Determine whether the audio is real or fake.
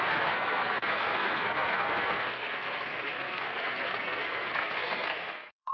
fake